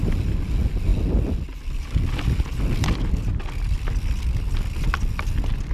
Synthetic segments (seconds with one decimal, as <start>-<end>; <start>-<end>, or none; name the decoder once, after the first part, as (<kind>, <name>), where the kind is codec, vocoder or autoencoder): none